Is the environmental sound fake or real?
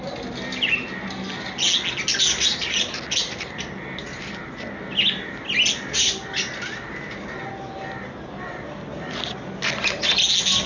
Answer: real